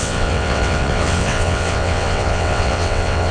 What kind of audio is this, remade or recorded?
remade